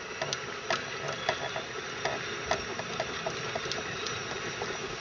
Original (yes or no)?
yes